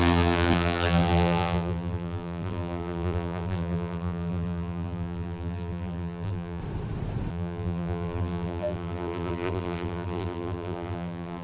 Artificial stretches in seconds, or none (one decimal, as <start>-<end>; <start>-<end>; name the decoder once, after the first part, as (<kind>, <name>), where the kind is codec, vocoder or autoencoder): 0.0-6.6 (vocoder, BigVGAN v2); 7.3-11.4